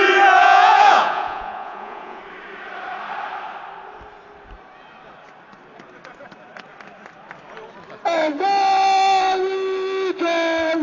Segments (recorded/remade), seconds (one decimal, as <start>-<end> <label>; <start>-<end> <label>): 0.0-0.4 recorded; 0.4-2.2 remade; 2.2-10.8 recorded